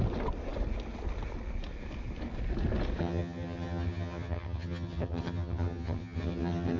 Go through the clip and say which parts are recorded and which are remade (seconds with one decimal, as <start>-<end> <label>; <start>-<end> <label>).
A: 0.0-3.0 recorded; 3.0-6.8 remade